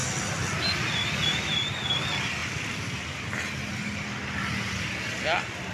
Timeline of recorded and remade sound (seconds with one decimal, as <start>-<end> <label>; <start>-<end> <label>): 0.0-5.7 recorded